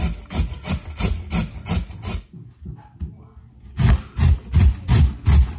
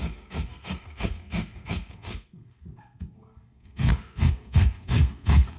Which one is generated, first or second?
second